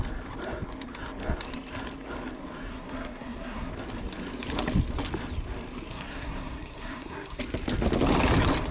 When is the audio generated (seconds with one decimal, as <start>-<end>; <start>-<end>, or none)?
2.7-3.7; 5.9-7.4

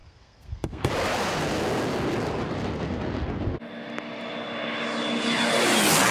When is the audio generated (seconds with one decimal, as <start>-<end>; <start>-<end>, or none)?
0.0-0.9

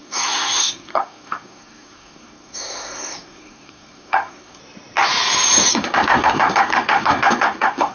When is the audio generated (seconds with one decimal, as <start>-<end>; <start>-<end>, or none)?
0.0-4.6; 5.7-7.9

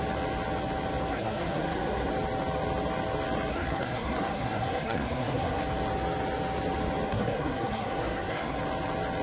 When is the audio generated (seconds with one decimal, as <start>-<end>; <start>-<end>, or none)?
1.1-2.1; 3.5-5.6; 7.1-8.6

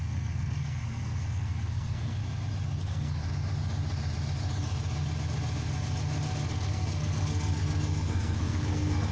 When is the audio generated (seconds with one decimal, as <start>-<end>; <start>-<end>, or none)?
0.0-2.2; 2.8-3.2; 6.5-9.1